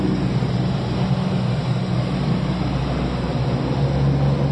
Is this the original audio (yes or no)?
yes